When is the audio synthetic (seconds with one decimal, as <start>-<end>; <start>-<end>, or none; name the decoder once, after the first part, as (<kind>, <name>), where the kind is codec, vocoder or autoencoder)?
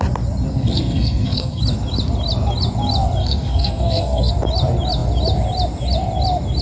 0.5-1.6 (codec, SNAC); 3.2-4.3